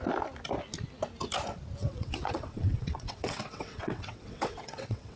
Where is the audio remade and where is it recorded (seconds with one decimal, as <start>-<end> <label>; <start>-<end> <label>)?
0.0-1.8 recorded; 1.8-5.2 remade